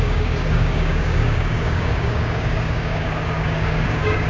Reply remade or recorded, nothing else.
remade